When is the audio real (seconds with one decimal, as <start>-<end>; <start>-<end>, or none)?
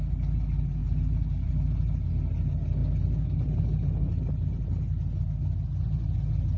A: 0.0-6.6